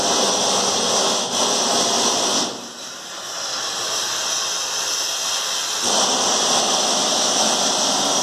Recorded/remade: recorded